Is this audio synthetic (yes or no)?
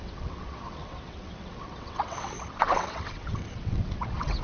yes